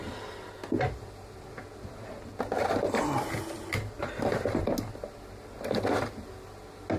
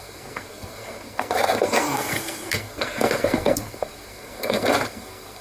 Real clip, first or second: first